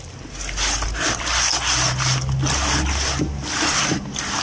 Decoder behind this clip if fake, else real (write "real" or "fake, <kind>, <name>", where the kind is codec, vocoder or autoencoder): real